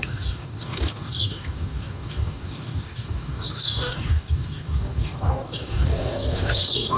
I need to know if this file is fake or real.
fake